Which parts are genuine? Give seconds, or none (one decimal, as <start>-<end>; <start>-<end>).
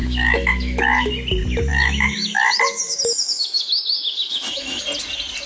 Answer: 1.1-1.7; 4.8-5.5